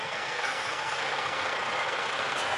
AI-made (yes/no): yes